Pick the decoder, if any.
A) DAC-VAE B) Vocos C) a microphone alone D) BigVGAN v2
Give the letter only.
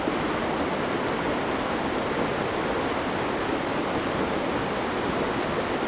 C